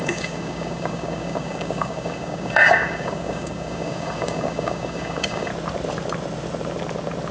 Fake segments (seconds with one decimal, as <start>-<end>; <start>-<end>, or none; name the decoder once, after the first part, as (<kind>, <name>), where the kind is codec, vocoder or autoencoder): 0.0-5.5 (codec, DAC)